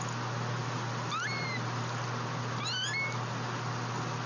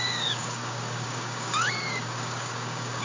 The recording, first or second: first